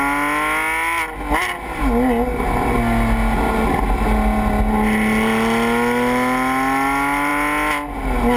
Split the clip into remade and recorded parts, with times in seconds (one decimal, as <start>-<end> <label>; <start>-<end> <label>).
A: 0.0-8.4 recorded